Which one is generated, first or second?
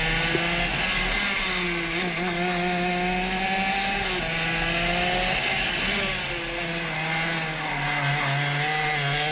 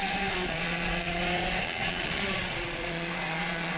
second